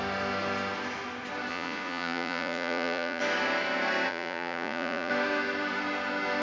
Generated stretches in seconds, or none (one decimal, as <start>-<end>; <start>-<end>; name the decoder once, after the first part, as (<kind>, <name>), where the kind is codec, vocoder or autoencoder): 1.5-3.2 (vocoder, Vocos); 4.1-5.1